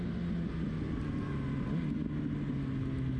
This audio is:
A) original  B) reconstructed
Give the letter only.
A